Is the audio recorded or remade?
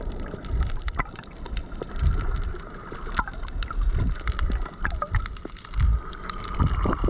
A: remade